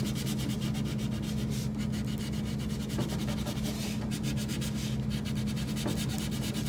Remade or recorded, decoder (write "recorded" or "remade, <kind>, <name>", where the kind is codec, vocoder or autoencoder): recorded